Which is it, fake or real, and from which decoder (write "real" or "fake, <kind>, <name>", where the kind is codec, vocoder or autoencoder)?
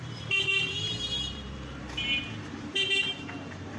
fake, vocoder, BigVGAN v2